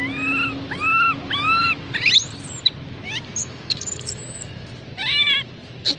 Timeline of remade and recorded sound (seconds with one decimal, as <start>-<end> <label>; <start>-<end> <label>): 0.0-3.4 recorded; 3.4-4.7 remade; 4.7-6.0 recorded